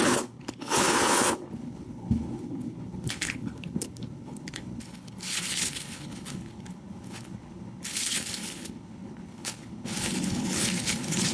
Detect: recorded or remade remade